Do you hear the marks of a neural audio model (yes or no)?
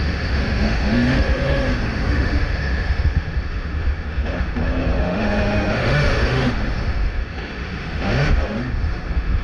yes